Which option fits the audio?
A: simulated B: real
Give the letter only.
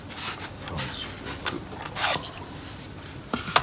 B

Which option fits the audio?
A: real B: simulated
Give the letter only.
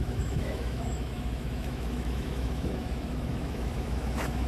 B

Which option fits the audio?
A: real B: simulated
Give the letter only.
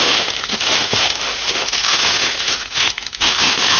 B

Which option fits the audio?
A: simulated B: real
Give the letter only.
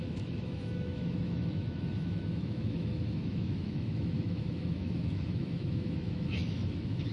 A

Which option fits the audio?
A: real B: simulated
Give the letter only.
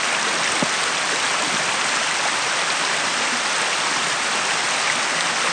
A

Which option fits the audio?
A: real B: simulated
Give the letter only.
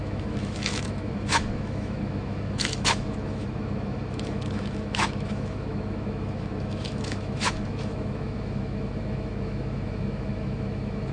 B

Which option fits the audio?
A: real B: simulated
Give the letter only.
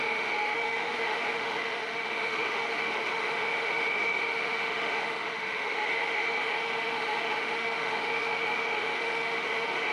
B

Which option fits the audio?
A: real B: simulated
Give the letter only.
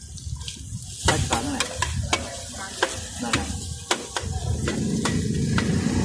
A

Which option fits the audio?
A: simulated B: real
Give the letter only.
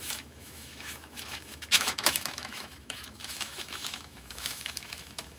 A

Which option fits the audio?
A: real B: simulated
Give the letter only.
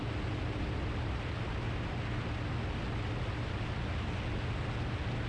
A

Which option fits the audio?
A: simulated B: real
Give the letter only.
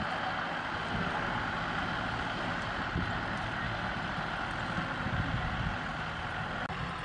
B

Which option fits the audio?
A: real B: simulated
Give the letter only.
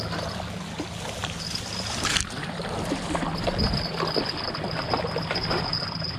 A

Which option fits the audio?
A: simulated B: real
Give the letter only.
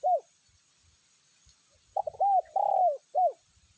B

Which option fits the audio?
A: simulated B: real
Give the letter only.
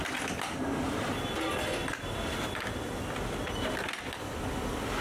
B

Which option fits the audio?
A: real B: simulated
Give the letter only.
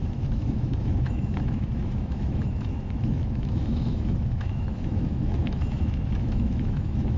B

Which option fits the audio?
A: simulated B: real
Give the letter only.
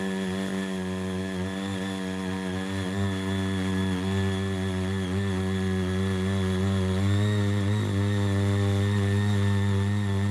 B